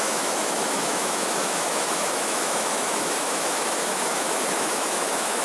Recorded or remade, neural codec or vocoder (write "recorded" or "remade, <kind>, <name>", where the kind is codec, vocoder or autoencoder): remade, autoencoder, DAC-VAE